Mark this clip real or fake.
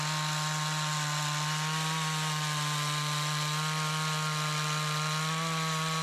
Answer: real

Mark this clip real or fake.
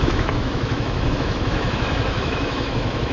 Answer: fake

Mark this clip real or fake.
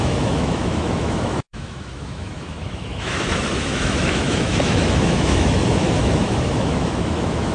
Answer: fake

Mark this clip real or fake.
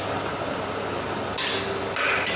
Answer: real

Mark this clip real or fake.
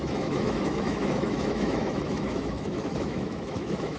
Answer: fake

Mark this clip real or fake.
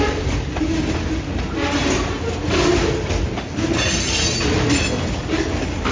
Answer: real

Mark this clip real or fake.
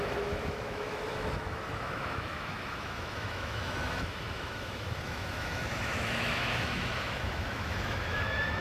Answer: fake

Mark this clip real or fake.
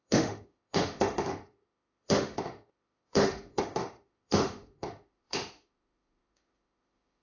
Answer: fake